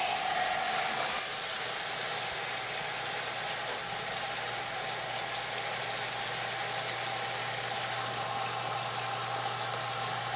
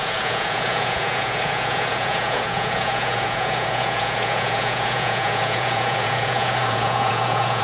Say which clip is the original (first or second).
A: first